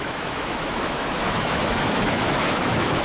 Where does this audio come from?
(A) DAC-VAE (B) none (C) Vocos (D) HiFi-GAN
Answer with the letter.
A